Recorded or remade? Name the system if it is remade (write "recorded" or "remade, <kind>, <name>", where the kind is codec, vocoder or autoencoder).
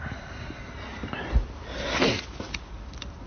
recorded